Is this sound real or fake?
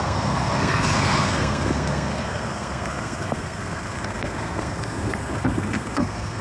fake